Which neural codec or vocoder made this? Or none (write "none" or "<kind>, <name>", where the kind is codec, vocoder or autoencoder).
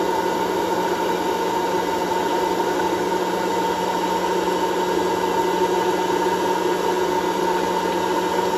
none